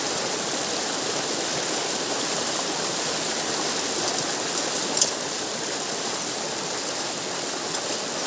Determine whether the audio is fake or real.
real